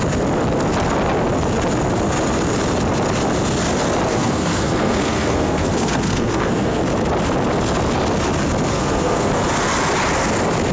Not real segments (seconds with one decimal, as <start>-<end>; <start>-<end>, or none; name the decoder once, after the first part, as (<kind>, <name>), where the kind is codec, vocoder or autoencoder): 4.1-6.8 (codec, SNAC); 8.7-9.3